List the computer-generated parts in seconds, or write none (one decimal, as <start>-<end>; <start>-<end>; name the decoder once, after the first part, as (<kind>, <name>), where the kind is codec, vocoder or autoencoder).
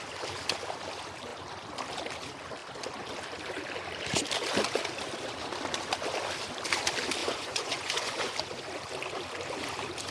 7.2-8.3 (vocoder, Vocos)